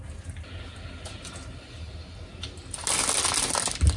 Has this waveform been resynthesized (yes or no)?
no